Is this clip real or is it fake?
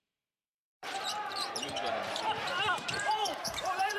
fake